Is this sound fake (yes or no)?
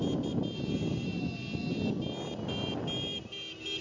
no